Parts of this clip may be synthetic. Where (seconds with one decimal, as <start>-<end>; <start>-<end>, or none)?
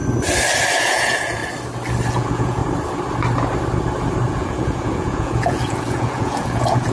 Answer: 0.8-1.4; 2.1-2.6; 4.3-6.9